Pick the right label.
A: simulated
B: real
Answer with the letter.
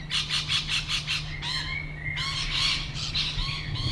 B